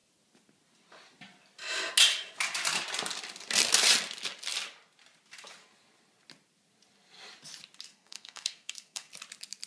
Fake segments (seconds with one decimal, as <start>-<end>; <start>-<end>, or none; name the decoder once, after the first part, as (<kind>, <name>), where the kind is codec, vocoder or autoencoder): 7.9-9.1 (codec, SNAC)